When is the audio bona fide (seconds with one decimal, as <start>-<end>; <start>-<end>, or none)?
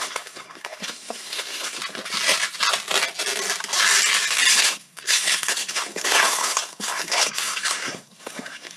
1.8-4.5